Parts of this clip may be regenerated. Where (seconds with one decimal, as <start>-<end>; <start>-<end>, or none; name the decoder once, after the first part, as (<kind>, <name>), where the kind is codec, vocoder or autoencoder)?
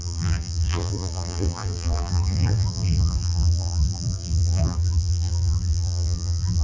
0.0-6.6 (vocoder, BigVGAN v2)